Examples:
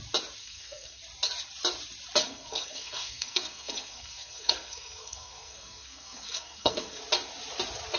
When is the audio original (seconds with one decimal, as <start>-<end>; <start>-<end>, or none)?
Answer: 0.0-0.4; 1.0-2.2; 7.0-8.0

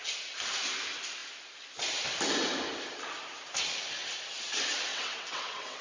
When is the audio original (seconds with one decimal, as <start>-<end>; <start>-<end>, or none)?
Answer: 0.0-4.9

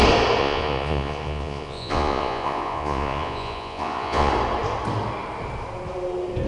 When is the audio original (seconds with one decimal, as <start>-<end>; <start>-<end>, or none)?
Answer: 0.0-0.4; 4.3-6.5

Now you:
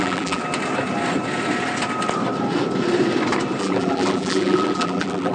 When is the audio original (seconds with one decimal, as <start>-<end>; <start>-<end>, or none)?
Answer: 0.4-3.6

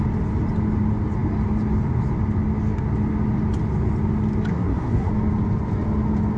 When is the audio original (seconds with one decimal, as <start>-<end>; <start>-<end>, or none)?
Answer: 0.0-4.5; 5.1-6.4

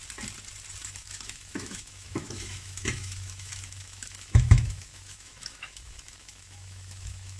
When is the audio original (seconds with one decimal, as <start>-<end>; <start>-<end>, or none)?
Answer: 0.0-0.8